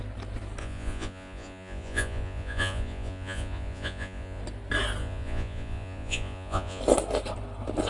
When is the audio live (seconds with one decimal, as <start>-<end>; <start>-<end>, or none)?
0.0-0.6; 4.4-5.0; 6.8-7.9